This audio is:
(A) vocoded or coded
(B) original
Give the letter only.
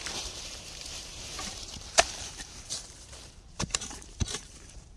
A